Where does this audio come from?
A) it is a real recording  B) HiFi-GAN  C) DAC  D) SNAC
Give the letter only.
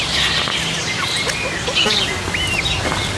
A